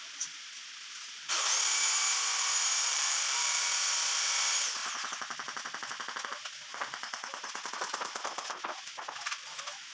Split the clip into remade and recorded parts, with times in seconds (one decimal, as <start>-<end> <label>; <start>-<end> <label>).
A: 0.0-2.9 recorded; 2.9-3.6 remade; 3.6-9.9 recorded